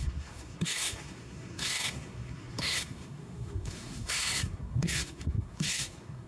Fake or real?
fake